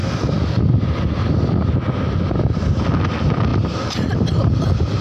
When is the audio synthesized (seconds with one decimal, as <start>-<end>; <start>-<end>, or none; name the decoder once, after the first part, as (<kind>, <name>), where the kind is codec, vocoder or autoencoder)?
0.0-0.6 (vocoder, BigVGAN v2); 3.5-5.0